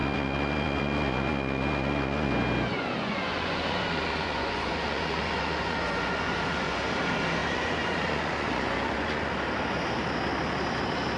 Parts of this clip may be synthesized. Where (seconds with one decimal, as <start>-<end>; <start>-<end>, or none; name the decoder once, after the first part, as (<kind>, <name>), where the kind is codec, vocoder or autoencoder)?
0.0-2.3 (vocoder, Vocos); 2.7-6.9; 7.4-9.3